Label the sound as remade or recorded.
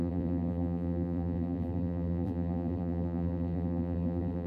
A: remade